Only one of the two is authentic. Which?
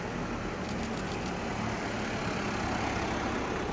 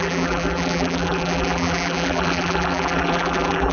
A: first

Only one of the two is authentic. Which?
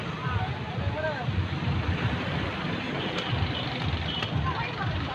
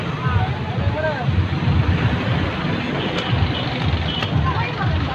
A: second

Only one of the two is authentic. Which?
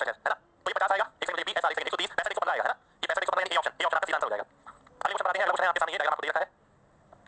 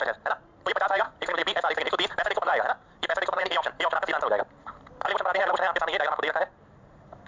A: first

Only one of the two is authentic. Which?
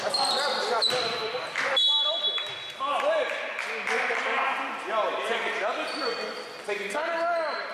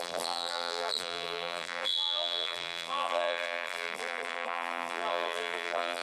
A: first